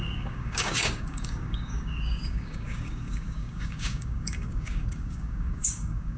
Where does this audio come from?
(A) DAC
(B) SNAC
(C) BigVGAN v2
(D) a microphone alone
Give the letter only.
A